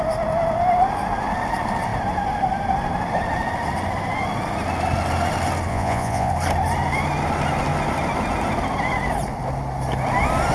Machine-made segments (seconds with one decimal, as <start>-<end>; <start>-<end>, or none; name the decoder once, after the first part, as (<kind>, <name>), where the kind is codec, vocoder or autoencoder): 5.7-6.3 (vocoder, Vocos)